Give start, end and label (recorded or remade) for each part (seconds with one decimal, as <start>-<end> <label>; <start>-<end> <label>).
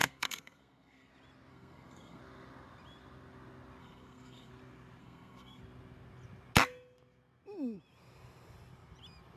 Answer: 0.0-1.1 remade; 1.1-1.5 recorded; 1.5-2.2 remade; 2.2-3.8 recorded; 3.8-4.5 remade; 4.5-5.0 recorded; 5.0-5.6 remade; 5.6-9.4 recorded